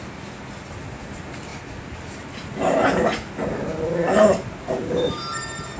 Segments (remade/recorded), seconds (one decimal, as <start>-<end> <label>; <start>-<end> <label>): 0.0-5.8 recorded